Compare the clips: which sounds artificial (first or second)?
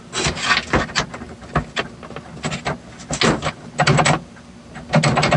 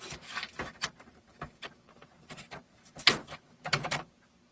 second